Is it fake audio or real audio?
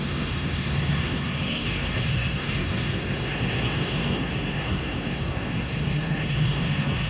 fake